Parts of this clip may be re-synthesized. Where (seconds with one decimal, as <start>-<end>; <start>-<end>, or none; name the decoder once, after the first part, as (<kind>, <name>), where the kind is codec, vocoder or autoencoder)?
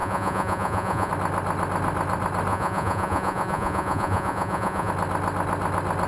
0.0-1.1 (vocoder, Vocos); 2.5-4.9